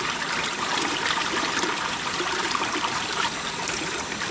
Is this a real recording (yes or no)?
no